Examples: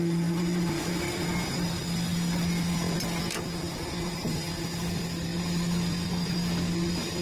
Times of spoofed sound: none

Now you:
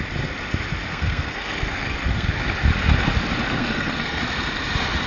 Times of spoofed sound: 0.9-2.3 (codec, SNAC); 3.6-4.2

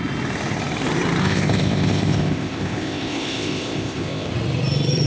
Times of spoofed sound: 1.2-4.3 (codec, ZipCodec)

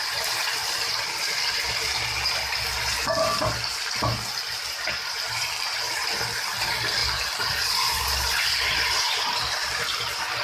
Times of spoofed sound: 0.0-10.4 (vocoder, BigVGAN v2)

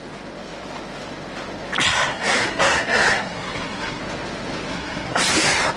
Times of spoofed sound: 2.1-4.0 (codec, SNAC); 4.7-5.2

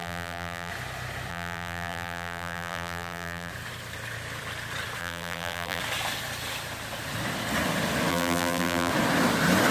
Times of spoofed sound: 0.0-0.7 (vocoder, BigVGAN v2); 1.3-3.5; 5.0-5.8; 8.1-8.9